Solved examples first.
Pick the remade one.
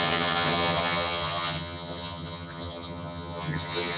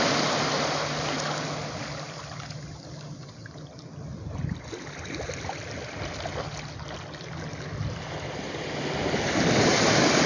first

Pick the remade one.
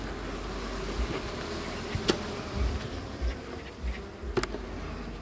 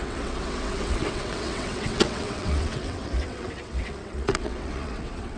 second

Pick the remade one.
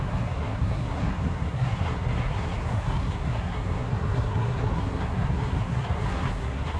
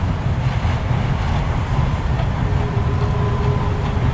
first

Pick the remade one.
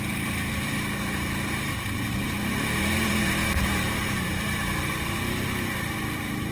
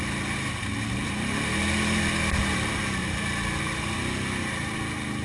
first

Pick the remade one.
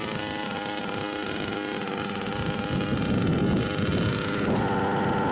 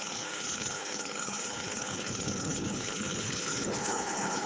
second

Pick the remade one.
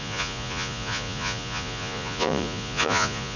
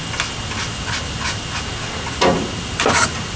first